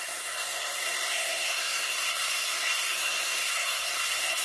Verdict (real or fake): fake